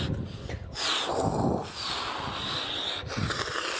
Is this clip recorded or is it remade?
recorded